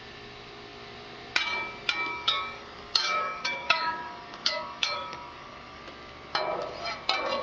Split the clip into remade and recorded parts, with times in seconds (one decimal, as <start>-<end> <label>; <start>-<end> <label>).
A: 0.0-2.1 recorded; 2.1-5.8 remade; 5.8-7.4 recorded